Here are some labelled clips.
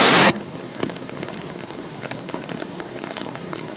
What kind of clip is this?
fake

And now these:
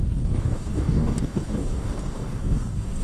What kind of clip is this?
fake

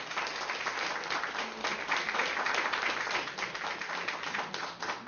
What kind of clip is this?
real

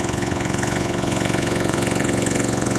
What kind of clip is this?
fake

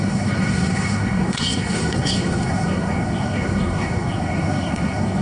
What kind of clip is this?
fake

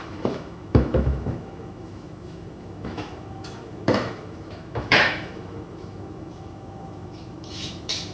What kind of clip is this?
fake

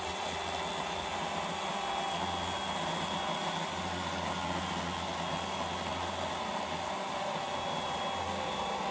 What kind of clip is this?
real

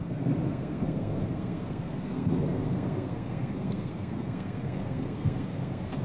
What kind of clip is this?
fake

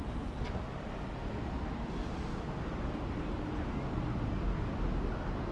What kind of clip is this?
real